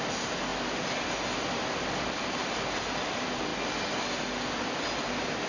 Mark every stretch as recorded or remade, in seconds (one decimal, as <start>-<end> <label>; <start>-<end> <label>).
0.0-0.5 remade; 0.5-1.8 recorded; 1.8-3.5 remade; 3.5-4.6 recorded; 4.6-5.5 remade